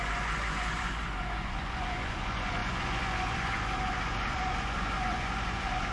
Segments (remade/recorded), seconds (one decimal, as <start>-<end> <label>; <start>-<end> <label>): 0.0-5.9 remade